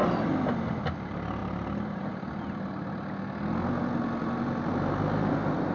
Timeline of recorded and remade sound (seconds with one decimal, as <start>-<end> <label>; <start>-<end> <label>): 0.0-5.7 recorded